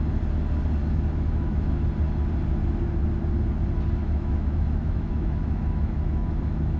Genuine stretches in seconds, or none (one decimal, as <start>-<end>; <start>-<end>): 0.0-0.8; 1.9-4.0